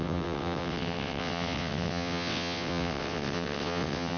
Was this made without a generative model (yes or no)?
no